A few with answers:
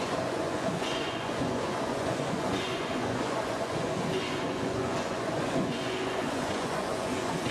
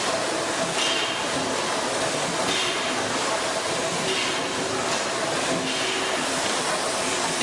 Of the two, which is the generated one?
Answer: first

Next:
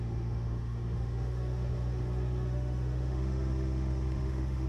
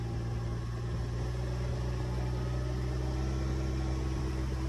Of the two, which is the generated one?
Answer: first